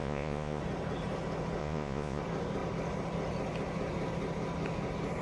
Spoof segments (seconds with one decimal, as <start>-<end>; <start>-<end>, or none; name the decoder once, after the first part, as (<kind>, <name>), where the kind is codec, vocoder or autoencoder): 0.0-0.6 (vocoder, Vocos); 1.6-2.2